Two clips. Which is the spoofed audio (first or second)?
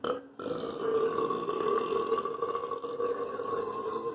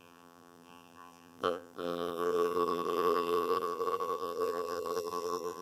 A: second